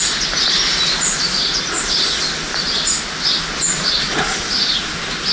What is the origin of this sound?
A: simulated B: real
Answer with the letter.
B